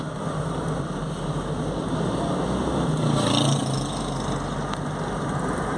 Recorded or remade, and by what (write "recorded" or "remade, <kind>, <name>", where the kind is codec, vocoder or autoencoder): recorded